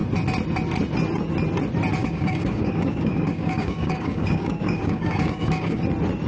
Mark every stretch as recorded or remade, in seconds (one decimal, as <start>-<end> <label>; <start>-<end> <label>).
0.0-2.0 recorded; 2.0-5.8 remade; 5.8-6.3 recorded